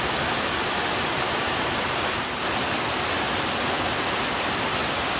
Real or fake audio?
real